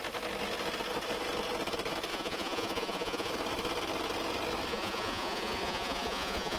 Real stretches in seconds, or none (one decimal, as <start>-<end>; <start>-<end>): 0.0-2.1; 3.3-4.7